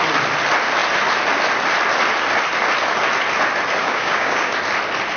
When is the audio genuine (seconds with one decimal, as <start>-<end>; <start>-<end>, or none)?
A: 0.0-3.8; 4.5-5.2